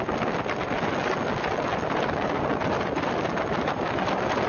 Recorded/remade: recorded